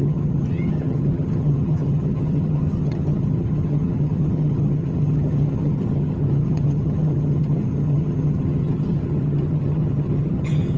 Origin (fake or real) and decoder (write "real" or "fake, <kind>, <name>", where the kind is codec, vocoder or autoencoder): fake, vocoder, HiFi-GAN